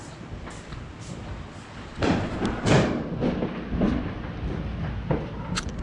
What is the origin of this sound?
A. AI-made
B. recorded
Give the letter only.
B